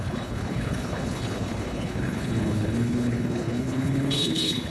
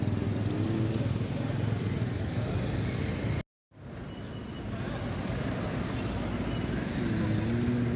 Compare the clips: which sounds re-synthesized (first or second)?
first